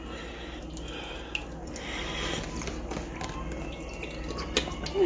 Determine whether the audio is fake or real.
real